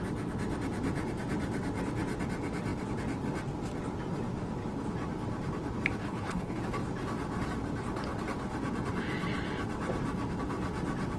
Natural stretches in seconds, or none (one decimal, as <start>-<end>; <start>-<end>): 0.0-6.0; 6.6-11.2